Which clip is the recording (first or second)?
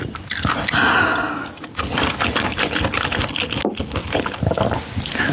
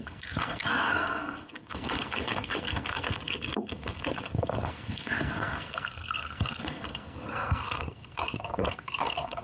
first